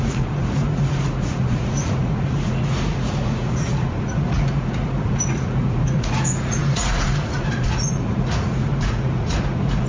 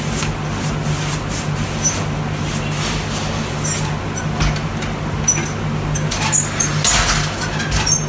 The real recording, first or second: second